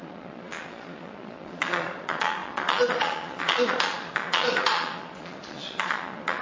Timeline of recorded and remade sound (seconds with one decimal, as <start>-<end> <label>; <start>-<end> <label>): 0.0-6.4 remade